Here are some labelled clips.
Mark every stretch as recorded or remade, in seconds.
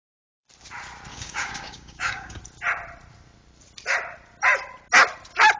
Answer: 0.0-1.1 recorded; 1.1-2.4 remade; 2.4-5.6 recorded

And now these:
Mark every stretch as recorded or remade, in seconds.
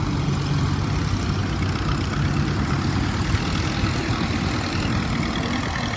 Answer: 0.0-6.0 recorded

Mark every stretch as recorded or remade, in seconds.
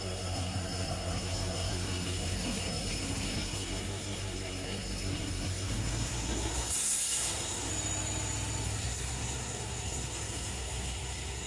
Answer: 0.0-7.7 remade; 7.7-8.6 recorded; 8.6-11.5 remade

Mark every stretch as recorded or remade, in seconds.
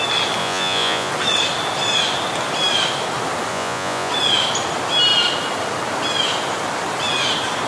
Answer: 0.0-0.4 recorded; 0.4-1.1 remade; 1.1-3.5 recorded; 3.5-4.1 remade; 4.1-7.7 recorded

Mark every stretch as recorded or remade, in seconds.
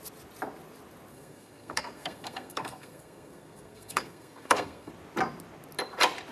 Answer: 0.0-1.1 recorded; 1.1-4.9 remade; 4.9-6.3 recorded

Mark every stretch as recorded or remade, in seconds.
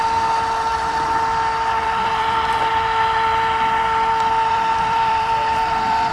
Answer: 0.0-0.7 recorded; 0.7-2.6 remade; 2.6-4.5 recorded; 4.5-6.1 remade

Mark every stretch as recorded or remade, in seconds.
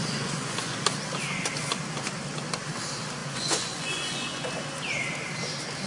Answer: 0.0-0.8 remade; 0.8-3.2 recorded; 3.2-4.5 remade; 4.5-5.9 recorded